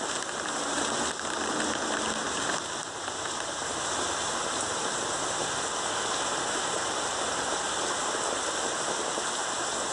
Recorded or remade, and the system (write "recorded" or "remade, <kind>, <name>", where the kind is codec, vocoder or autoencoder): recorded